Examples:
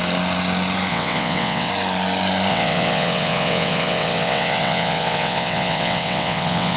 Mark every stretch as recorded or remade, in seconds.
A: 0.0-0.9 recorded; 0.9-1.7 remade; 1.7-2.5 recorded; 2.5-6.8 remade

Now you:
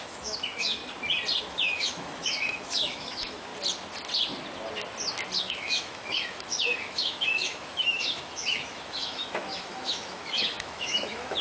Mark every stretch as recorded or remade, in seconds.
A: 0.0-0.8 remade; 0.8-1.4 recorded; 1.4-3.5 remade; 3.5-5.4 recorded; 5.4-11.4 remade

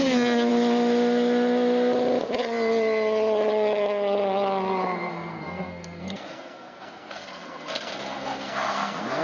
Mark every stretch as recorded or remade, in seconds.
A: 0.0-0.5 remade; 0.5-5.1 recorded; 5.1-9.2 remade

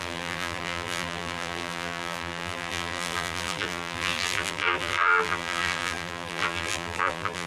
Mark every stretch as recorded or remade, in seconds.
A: 0.0-7.5 remade